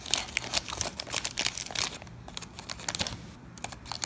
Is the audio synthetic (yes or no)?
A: no